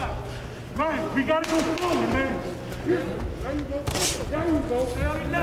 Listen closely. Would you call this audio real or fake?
real